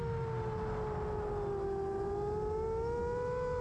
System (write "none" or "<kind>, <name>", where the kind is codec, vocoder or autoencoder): none